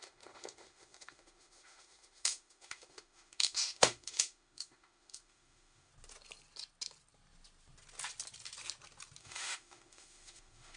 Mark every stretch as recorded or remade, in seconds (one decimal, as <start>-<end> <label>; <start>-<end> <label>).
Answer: 0.0-5.9 remade; 5.9-9.2 recorded; 9.2-10.8 remade